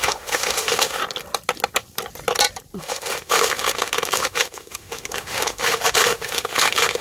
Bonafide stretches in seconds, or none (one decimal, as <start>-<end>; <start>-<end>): 1.0-2.8